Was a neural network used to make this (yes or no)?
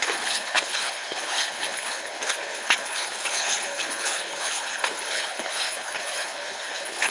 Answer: yes